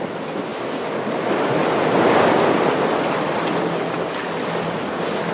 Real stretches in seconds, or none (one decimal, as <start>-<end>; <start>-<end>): 0.0-5.3